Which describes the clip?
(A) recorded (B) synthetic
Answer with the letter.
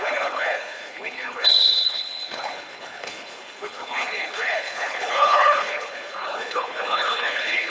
B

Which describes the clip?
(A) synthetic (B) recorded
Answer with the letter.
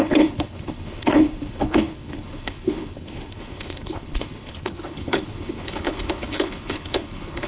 A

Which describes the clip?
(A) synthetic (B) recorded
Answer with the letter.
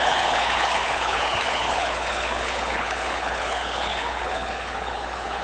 A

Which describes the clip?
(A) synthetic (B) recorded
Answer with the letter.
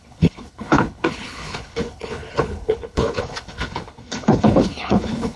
A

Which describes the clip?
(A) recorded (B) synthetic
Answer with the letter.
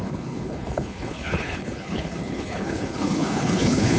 B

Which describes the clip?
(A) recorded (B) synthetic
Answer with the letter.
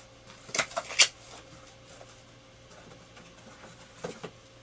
A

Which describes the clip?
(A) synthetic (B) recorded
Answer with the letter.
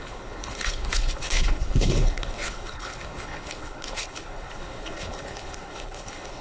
A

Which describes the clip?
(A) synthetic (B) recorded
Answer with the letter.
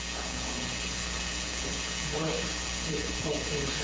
A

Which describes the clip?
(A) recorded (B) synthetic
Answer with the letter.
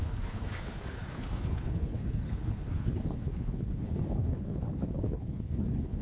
B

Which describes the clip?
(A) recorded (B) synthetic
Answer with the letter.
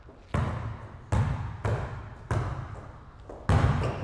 A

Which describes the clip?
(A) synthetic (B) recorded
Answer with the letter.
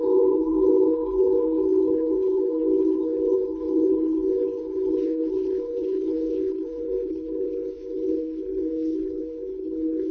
A